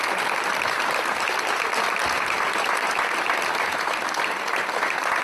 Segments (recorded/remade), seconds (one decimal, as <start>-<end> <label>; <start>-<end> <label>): 0.0-5.2 recorded